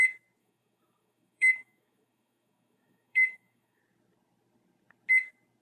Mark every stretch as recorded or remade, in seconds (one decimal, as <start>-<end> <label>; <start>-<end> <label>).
0.0-0.4 recorded; 0.4-3.8 remade; 3.8-5.6 recorded